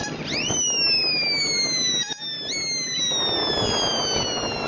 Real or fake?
real